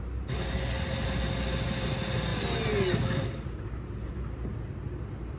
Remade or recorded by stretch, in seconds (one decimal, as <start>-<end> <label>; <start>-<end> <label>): 0.0-5.4 recorded